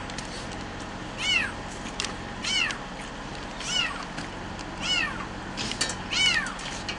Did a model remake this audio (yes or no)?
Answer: no